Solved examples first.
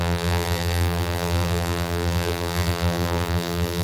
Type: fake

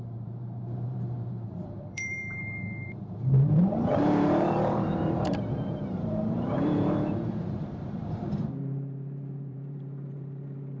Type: fake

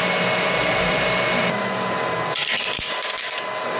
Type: fake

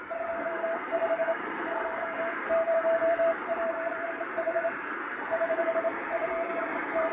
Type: fake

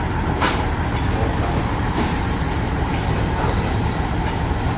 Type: fake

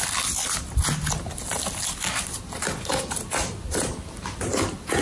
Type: real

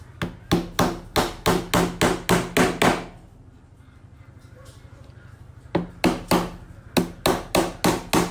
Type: real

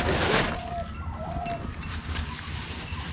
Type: real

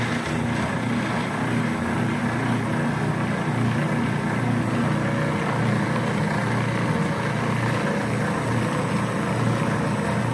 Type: real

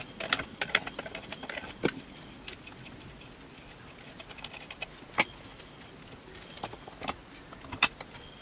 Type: real